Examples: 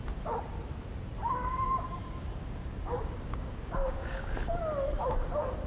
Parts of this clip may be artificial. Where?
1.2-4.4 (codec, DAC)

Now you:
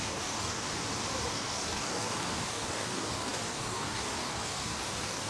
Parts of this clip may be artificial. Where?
0.0-0.7 (codec, DAC); 1.3-5.3

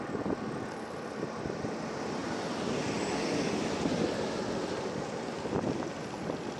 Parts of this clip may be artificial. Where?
none

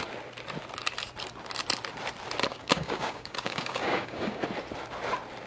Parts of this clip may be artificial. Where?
2.5-4.4 (codec, DAC)